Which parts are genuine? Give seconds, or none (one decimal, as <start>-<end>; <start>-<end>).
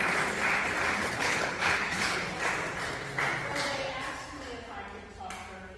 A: 0.0-1.0; 2.2-5.8